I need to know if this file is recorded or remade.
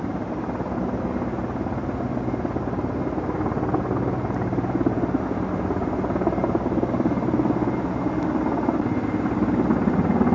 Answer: recorded